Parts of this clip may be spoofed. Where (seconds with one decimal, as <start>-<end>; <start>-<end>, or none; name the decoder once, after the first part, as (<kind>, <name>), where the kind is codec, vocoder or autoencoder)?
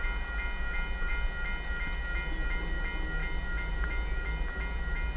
none